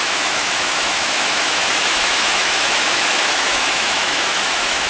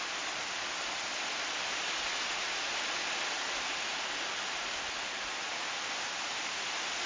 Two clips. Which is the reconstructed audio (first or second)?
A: first